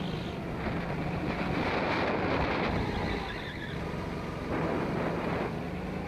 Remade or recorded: recorded